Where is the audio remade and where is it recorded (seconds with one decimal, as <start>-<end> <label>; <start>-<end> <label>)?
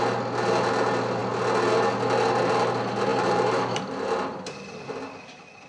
0.0-3.1 recorded; 3.1-3.8 remade; 3.8-5.7 recorded